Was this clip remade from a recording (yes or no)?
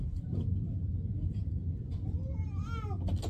no